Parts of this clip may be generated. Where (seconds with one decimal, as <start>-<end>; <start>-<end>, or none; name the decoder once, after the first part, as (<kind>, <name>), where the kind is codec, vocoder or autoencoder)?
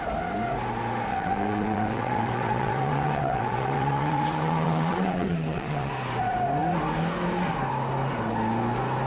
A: 1.1-5.9 (vocoder, WaveNeXt)